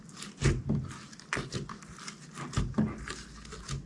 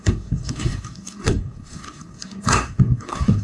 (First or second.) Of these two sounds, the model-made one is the second